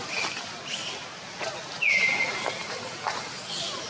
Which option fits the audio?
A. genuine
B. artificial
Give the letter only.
A